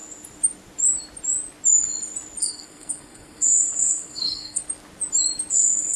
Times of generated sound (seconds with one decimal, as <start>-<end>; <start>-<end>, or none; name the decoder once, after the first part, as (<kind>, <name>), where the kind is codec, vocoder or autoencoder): 2.4-4.6 (codec, SNAC); 5.5-6.0